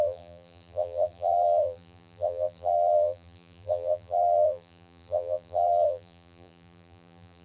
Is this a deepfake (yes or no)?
yes